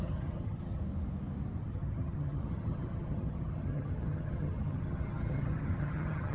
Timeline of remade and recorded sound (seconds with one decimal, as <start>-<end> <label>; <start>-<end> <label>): 0.0-0.8 remade; 0.8-1.6 recorded; 1.6-6.3 remade